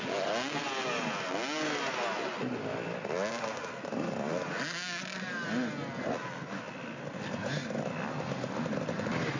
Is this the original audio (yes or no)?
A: yes